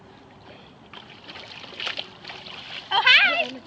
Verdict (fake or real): real